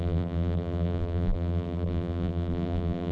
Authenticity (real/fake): fake